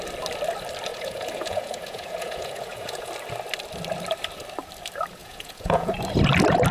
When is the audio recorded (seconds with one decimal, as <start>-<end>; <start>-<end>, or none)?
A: 0.0-0.9; 3.1-5.2; 5.9-6.7